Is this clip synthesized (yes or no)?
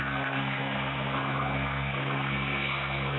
yes